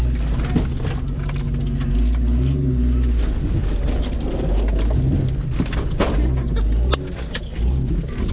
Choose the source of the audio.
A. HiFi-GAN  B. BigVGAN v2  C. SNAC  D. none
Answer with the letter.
D